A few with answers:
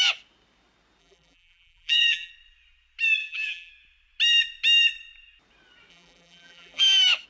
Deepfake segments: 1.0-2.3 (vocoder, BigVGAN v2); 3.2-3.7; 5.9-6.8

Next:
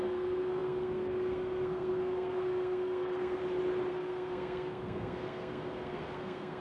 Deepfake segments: 0.0-3.4 (codec, SNAC); 3.9-6.6

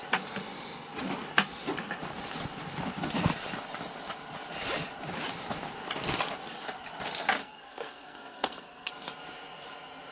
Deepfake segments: 7.4-8.9 (codec, SNAC)